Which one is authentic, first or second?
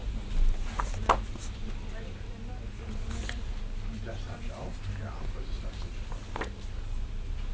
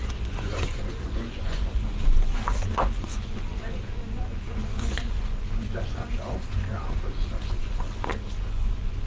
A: first